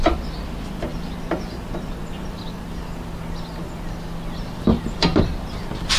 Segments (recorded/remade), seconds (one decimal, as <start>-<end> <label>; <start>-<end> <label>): 0.0-4.7 recorded; 4.7-5.2 remade; 5.2-6.0 recorded